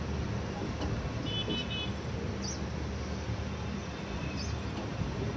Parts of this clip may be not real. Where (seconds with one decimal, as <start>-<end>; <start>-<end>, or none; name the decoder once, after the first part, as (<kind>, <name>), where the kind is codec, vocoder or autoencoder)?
none